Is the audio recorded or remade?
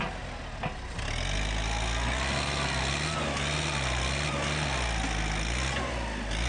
recorded